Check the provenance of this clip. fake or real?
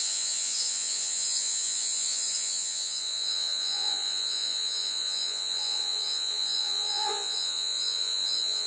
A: fake